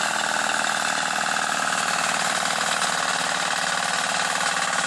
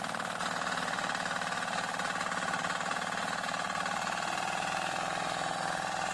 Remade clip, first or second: second